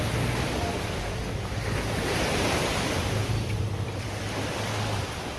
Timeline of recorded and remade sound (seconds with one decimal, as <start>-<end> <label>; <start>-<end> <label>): 0.0-2.6 recorded; 2.6-4.0 remade; 4.0-5.4 recorded